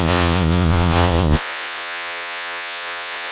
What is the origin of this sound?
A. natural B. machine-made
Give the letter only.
B